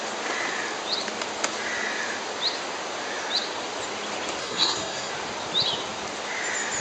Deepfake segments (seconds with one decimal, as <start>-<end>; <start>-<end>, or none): 4.4-5.1